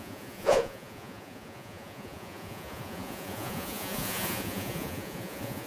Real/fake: fake